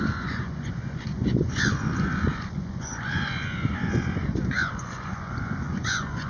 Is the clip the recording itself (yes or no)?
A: no